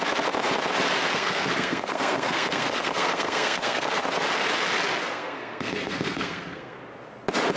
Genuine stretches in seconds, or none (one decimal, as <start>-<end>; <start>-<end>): 0.0-1.1; 4.0-5.0; 6.8-7.6